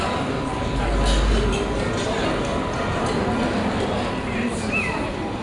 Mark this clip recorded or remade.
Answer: recorded